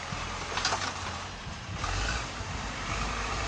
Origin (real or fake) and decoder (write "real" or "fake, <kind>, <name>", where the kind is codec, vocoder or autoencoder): fake, vocoder, BigVGAN v2